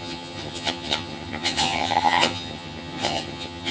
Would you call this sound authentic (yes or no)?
no